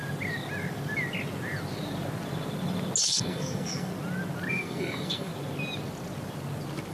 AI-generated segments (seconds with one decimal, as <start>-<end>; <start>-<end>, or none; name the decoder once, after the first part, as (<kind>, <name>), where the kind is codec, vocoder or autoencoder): 3.0-3.9 (codec, SNAC); 4.5-5.3